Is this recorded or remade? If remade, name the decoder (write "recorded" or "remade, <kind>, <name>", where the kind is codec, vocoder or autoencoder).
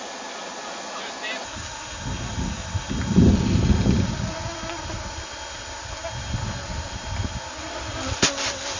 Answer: recorded